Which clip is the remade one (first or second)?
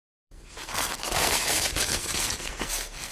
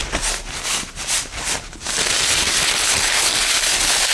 first